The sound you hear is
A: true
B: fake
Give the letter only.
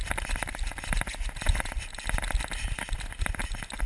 A